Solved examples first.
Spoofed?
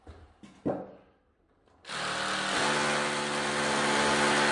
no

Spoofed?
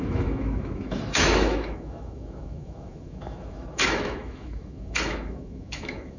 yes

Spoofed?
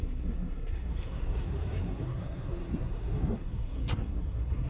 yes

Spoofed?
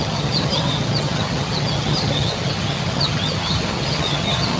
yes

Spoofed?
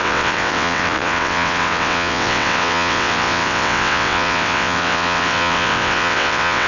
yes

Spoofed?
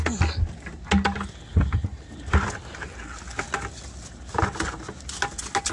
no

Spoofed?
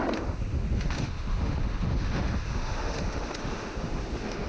yes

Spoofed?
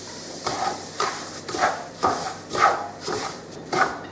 yes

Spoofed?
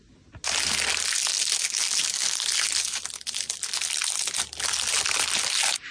no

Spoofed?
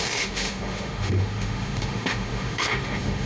yes